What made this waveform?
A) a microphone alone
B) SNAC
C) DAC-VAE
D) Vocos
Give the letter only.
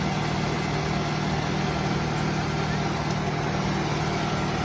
A